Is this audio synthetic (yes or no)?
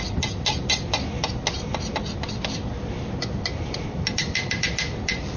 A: no